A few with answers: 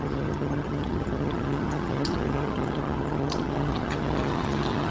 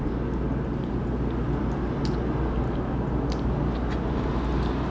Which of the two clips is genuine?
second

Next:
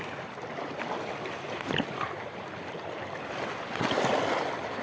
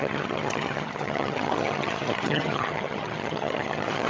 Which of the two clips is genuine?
first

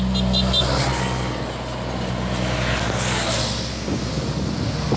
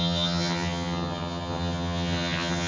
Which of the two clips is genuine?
first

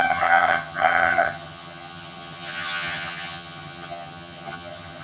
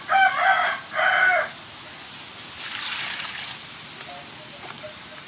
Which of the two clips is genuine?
second